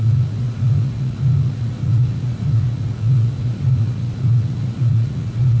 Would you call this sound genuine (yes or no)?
no